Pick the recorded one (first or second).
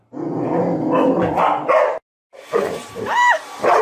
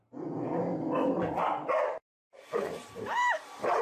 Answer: first